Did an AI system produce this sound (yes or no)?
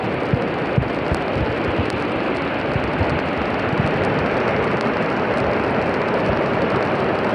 no